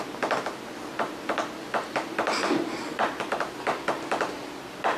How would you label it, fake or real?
real